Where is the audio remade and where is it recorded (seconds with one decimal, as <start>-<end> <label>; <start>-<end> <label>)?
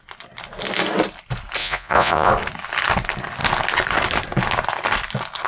0.0-1.6 recorded; 1.6-2.3 remade; 2.3-5.5 recorded